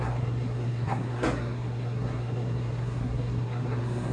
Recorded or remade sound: remade